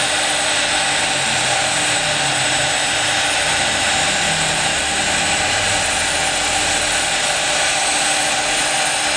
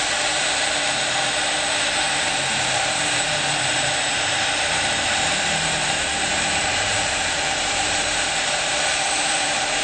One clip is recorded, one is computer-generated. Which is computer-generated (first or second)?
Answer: second